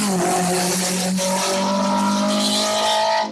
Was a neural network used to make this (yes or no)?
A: no